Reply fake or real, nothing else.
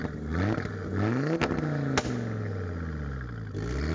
real